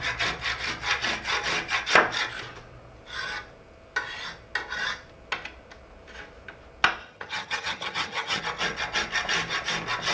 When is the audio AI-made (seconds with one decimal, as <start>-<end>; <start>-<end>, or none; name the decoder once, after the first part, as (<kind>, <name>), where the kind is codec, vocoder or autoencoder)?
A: 7.0-8.4 (vocoder, HiFi-GAN)